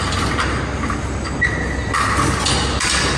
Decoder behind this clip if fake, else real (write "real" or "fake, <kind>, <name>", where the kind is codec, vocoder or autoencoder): real